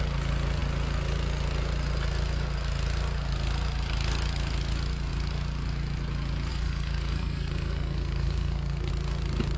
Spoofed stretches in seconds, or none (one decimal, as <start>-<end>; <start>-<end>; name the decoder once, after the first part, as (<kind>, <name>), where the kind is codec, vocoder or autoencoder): 6.5-8.9 (codec, SNAC)